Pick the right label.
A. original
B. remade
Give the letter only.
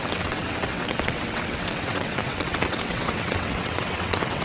B